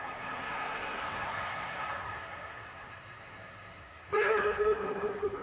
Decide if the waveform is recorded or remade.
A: remade